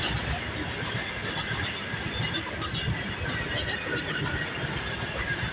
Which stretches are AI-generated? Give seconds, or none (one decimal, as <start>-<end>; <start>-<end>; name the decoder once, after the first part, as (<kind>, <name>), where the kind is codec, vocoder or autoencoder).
none